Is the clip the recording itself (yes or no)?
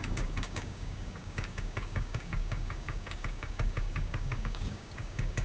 no